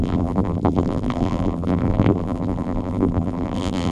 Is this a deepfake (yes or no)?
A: yes